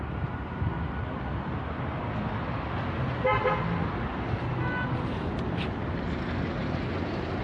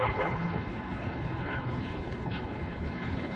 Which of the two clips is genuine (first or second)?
first